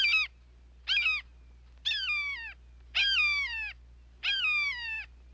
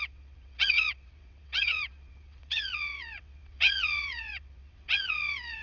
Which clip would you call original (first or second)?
first